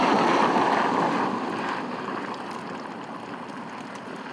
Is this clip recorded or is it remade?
remade